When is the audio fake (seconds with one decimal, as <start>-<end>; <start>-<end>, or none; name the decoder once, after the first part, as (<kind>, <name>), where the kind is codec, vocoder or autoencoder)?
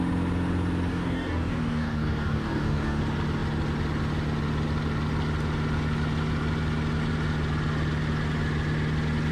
0.9-3.0 (codec, DAC)